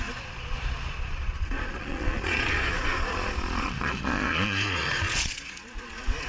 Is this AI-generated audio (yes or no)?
yes